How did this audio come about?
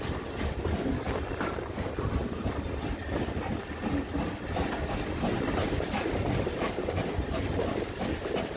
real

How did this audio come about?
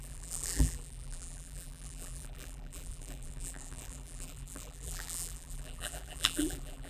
fake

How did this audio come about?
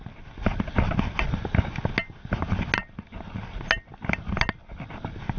real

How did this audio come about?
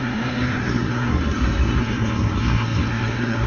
fake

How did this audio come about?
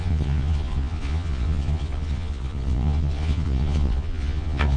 fake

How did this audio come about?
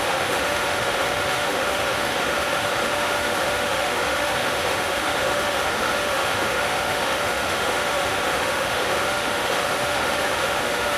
fake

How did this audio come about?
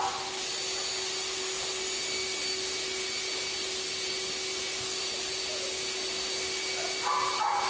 real